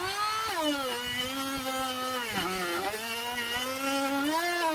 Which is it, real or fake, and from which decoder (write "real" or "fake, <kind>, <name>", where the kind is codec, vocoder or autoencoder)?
real